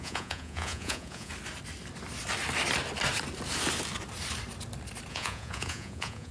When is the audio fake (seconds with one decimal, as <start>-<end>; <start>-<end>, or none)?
0.0-1.3; 5.1-6.3